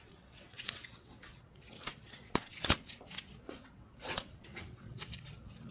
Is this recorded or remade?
remade